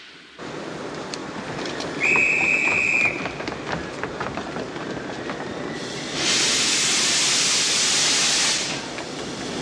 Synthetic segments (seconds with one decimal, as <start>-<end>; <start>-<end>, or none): none